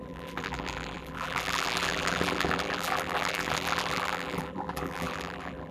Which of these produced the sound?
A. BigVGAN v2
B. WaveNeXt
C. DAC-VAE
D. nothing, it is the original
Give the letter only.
A